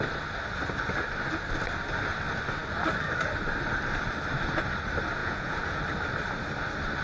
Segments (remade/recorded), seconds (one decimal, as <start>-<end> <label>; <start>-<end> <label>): 0.0-5.2 recorded; 5.2-5.8 remade; 5.8-7.0 recorded